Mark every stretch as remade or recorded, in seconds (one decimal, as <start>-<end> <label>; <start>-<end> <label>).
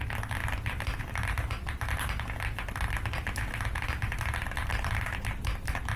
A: 0.0-6.0 recorded